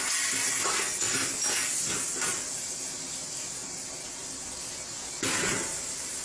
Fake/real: real